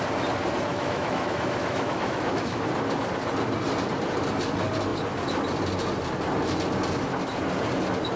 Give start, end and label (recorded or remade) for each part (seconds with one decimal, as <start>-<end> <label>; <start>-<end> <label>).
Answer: 0.0-0.7 recorded; 0.7-2.6 remade; 2.6-8.2 recorded